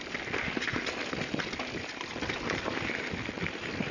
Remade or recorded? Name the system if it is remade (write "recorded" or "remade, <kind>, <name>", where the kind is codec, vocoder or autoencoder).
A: recorded